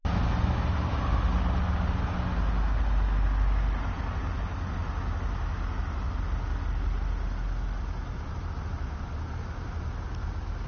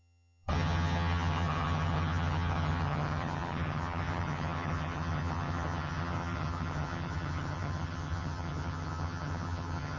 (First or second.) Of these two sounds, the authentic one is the first